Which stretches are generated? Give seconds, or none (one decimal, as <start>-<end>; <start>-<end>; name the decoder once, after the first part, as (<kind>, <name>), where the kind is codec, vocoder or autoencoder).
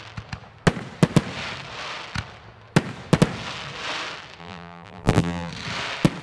4.4-5.5 (vocoder, BigVGAN v2)